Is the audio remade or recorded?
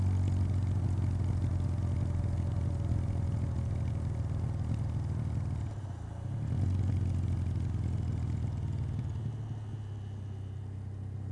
recorded